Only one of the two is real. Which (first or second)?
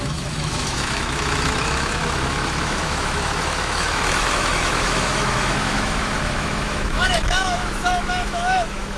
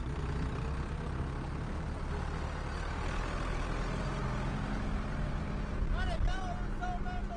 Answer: second